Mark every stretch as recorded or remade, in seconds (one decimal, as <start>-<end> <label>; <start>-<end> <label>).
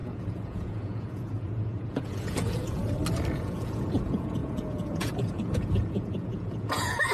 0.0-2.8 remade; 2.8-3.3 recorded; 3.3-7.1 remade